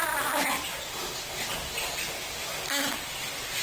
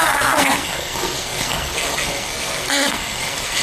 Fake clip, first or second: second